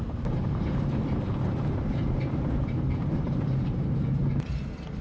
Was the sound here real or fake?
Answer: fake